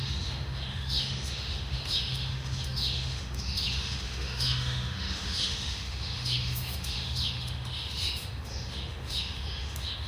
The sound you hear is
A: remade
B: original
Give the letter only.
A